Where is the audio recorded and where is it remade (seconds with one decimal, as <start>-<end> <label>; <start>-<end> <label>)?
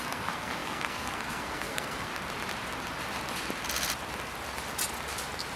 0.0-2.1 remade; 2.1-5.6 recorded